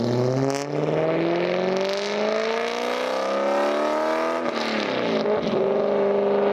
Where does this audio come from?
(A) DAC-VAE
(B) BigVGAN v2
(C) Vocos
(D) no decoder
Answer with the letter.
D